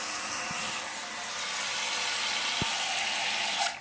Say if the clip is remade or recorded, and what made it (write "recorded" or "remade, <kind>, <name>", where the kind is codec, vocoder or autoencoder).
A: recorded